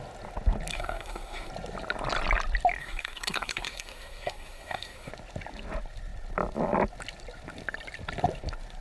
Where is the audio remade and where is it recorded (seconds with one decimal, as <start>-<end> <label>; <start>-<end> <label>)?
0.0-0.7 recorded; 0.7-1.5 remade; 1.5-2.8 recorded; 2.8-5.1 remade; 5.1-8.8 recorded

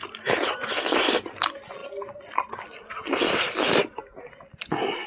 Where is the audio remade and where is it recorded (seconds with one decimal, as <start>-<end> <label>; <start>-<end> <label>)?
0.0-5.1 recorded

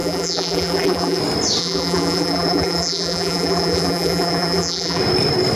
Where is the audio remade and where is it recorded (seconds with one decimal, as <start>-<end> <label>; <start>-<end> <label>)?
0.0-1.2 remade; 1.2-1.6 recorded; 1.6-5.0 remade; 5.0-5.6 recorded

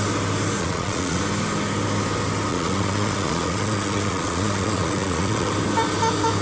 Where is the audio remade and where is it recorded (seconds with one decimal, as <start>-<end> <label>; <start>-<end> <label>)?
0.0-0.6 recorded; 0.6-1.2 remade; 1.2-2.5 recorded; 2.5-5.5 remade; 5.5-6.4 recorded

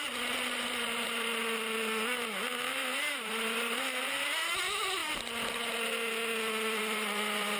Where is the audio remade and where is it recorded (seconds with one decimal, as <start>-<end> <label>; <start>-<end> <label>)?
0.0-1.4 remade; 1.4-2.7 recorded; 2.7-5.0 remade; 5.0-6.8 recorded; 6.8-7.6 remade

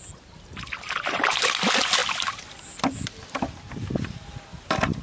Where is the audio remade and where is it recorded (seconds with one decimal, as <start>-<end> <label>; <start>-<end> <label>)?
0.0-5.0 recorded

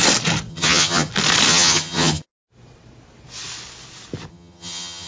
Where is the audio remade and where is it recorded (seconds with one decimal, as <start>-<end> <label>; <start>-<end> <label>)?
0.0-0.5 recorded; 0.5-1.1 remade; 1.1-1.5 recorded; 1.5-2.2 remade; 2.2-4.3 recorded; 4.3-5.1 remade

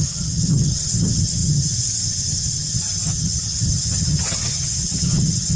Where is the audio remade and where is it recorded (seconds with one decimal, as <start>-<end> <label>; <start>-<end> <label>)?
0.0-5.6 remade